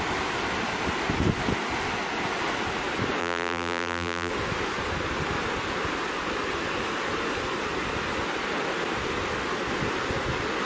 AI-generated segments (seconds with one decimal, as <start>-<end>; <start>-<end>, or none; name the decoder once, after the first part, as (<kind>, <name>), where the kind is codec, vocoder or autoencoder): 3.2-4.3 (vocoder, BigVGAN v2)